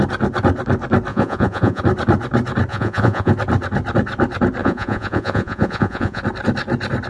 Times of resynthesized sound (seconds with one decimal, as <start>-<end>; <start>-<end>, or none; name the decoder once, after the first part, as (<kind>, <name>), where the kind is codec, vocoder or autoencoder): 1.1-1.8 (vocoder, Vocos); 2.7-3.3; 4.6-6.2